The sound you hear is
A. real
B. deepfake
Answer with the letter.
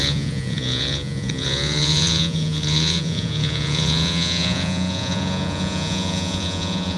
B